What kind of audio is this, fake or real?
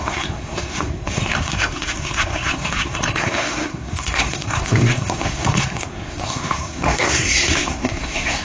fake